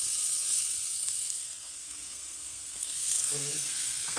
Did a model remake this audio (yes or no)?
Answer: yes